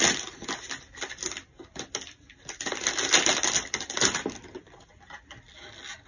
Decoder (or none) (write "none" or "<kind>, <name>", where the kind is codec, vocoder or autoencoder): none